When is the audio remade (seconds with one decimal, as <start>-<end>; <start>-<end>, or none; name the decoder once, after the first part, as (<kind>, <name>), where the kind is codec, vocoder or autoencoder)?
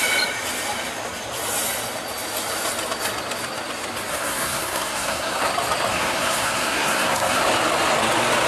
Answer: 4.1-5.4 (codec, SNAC); 5.9-7.4